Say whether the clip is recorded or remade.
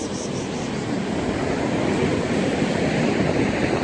recorded